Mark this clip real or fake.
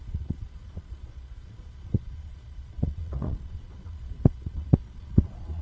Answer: fake